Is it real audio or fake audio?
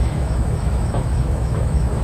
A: fake